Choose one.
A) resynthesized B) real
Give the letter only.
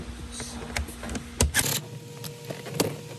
B